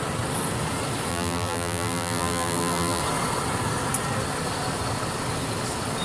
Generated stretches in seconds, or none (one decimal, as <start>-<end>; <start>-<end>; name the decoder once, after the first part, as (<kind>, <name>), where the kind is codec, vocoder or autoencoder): 1.1-3.0 (vocoder, BigVGAN v2)